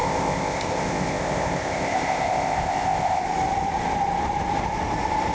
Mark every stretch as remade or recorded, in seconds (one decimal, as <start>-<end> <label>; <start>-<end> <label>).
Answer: 0.0-3.2 remade; 3.2-5.3 recorded